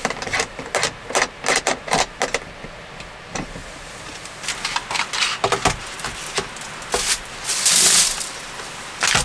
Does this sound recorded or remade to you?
recorded